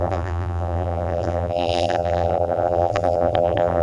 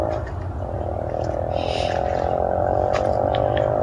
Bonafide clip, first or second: second